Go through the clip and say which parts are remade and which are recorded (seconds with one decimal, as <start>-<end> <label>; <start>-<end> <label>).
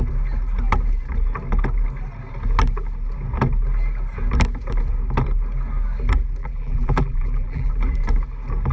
0.0-6.4 recorded; 6.4-7.7 remade; 7.7-8.7 recorded